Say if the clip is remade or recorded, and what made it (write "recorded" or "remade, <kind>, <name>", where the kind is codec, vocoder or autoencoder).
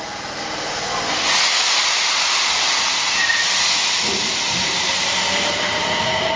recorded